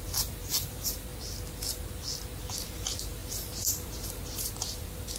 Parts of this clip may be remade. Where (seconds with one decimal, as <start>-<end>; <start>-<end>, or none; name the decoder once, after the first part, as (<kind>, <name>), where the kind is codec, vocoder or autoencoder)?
0.0-1.1 (vocoder, BigVGAN v2); 2.5-5.2